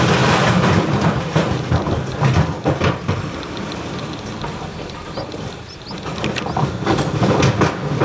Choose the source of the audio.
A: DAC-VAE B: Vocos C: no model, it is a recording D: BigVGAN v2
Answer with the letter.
C